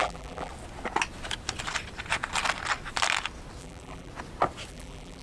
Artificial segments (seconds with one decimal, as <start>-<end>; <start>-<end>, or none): 0.0-0.5; 3.6-4.1; 4.7-5.2

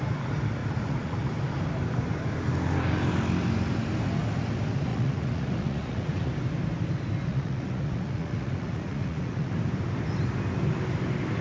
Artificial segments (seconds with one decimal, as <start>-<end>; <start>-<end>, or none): 0.6-1.3; 4.9-6.3; 7.3-9.5

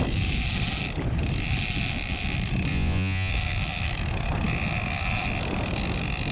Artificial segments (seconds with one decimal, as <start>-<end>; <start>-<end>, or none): 2.7-3.3

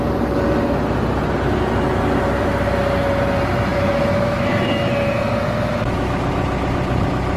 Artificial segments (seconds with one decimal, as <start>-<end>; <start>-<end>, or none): 3.7-6.3